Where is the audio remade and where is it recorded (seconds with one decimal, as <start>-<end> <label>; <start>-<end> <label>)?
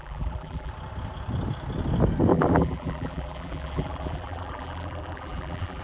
0.0-0.7 remade; 0.7-2.3 recorded; 2.3-5.8 remade